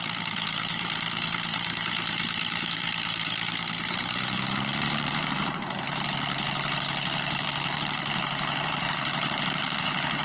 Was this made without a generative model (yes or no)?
no